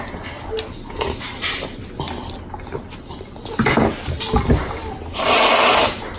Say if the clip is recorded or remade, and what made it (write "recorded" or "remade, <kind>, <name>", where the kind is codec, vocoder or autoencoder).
recorded